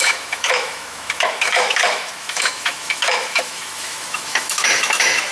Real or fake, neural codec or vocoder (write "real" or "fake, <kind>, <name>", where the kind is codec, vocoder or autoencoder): fake, autoencoder, DAC-VAE